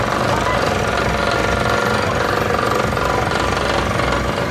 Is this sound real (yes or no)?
yes